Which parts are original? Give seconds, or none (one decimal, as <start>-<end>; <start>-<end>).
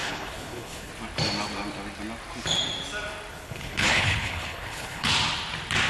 0.9-3.3; 5.1-5.9